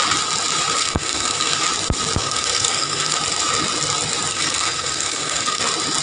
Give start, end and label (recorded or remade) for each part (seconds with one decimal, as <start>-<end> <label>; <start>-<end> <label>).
0.0-0.8 recorded; 0.8-1.6 remade; 1.6-2.2 recorded; 2.2-3.2 remade; 3.2-4.3 recorded; 4.3-5.6 remade; 5.6-6.0 recorded